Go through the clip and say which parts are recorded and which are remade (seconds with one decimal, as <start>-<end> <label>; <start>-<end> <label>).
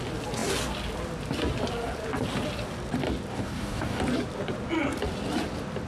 0.0-3.3 recorded; 3.3-4.0 remade; 4.0-5.9 recorded